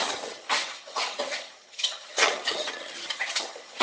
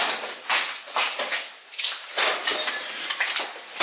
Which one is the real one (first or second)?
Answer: second